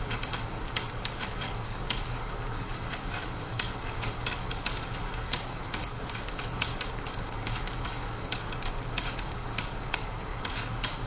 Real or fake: fake